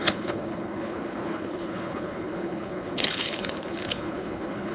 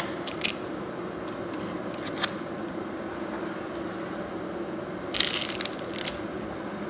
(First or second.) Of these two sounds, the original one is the second